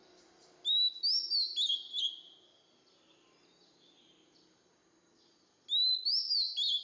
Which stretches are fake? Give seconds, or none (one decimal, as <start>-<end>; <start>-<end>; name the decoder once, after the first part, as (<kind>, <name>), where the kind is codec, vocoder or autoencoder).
none